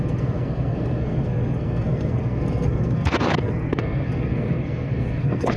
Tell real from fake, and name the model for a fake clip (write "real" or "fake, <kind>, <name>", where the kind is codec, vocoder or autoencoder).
fake, codec, SNAC